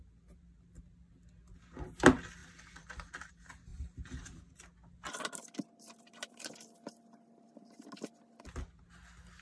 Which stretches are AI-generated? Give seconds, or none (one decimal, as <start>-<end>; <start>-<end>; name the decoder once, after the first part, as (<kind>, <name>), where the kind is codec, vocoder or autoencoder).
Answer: 2.4-3.3 (vocoder, BigVGAN v2); 3.7-6.9